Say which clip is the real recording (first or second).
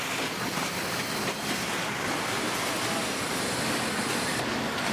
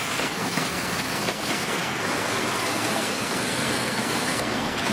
first